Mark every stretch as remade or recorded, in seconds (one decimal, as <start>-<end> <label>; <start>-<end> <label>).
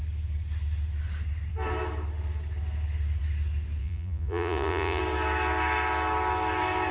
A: 0.0-3.8 recorded; 3.8-5.0 remade; 5.0-6.9 recorded